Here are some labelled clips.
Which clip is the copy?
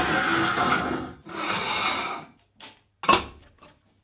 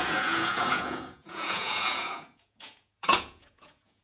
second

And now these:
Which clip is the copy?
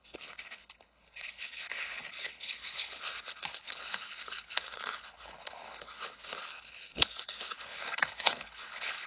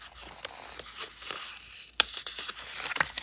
first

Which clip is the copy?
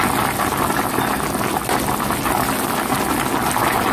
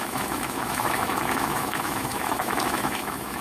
second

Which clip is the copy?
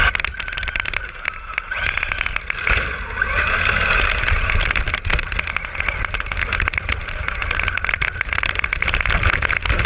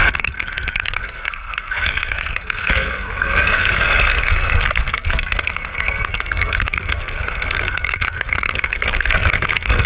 second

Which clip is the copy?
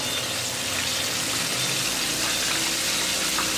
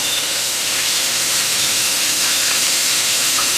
second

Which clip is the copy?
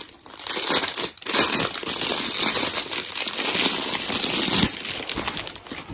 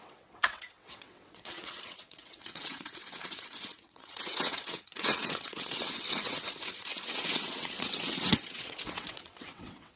second